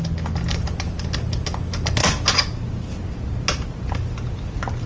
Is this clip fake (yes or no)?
no